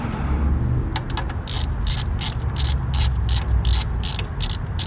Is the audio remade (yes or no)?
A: no